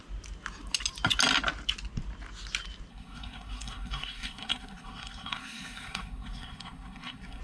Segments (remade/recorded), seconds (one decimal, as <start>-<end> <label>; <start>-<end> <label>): 0.0-2.9 recorded; 2.9-7.4 remade